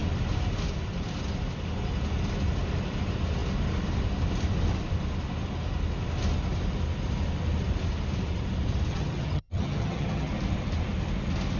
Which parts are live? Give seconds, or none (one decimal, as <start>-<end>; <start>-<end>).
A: 0.0-8.9; 10.3-11.6